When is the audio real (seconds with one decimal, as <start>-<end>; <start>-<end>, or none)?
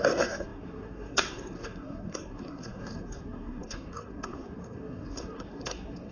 none